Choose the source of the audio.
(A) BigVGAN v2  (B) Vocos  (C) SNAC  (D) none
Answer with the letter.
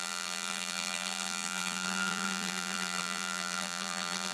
A